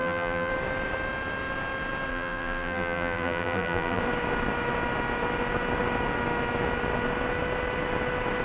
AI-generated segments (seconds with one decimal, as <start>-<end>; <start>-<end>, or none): 0.0-0.5; 2.1-4.0